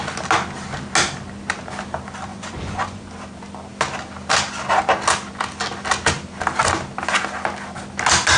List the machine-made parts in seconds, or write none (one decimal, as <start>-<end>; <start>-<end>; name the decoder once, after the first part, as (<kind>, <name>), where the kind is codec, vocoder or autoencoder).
2.3-3.1 (vocoder, Vocos)